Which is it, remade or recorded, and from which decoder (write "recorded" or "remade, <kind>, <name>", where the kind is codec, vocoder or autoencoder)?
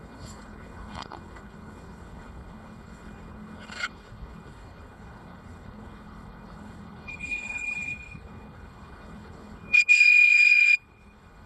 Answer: remade, codec, HILCodec